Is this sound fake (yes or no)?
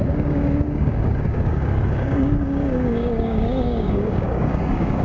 yes